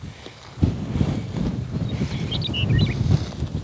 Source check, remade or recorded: recorded